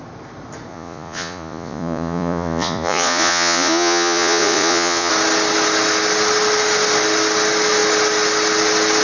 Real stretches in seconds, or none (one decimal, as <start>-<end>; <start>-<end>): 0.0-0.7; 5.1-9.0